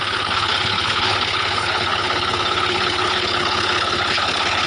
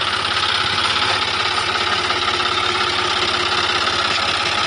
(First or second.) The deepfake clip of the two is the first